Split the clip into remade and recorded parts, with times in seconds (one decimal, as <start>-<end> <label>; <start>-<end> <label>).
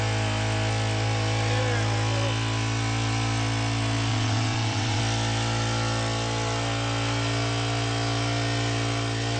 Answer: 0.0-4.1 recorded; 4.1-5.0 remade; 5.0-9.4 recorded